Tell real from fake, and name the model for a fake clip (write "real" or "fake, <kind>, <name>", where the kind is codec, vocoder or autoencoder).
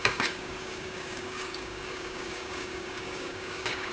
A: fake, codec, DAC